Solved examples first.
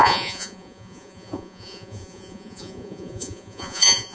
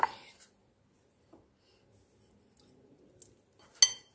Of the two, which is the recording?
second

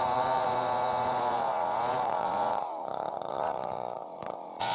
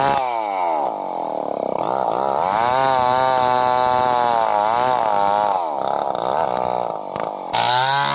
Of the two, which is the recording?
second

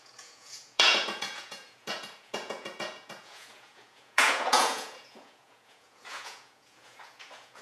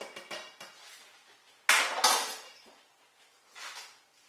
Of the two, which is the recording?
second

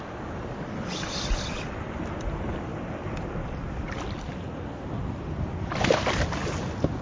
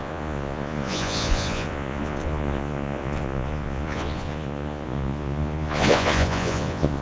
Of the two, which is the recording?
first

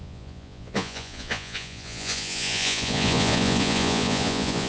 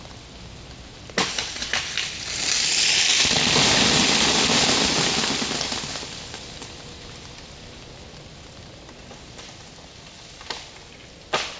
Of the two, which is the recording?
second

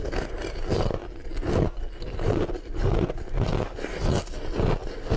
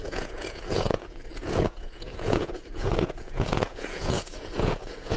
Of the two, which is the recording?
first